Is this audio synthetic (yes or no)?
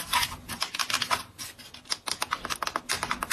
no